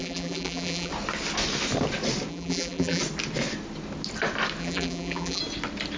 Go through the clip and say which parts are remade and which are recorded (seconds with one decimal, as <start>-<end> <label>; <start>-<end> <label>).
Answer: 0.0-0.9 remade; 0.9-2.3 recorded; 2.3-3.0 remade; 3.0-4.6 recorded; 4.6-5.4 remade; 5.4-6.0 recorded